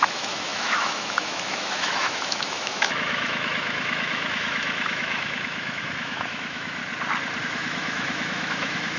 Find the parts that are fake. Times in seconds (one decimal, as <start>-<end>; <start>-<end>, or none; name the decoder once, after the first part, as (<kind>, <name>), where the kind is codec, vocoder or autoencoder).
0.0-6.8 (autoencoder, DAC-VAE); 7.4-9.0